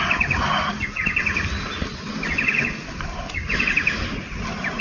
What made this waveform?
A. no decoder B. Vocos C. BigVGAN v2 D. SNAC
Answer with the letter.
A